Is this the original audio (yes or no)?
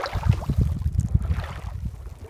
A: yes